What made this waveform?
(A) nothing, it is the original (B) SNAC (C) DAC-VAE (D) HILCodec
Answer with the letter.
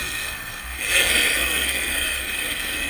B